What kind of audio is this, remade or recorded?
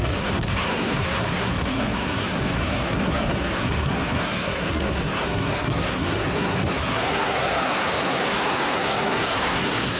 remade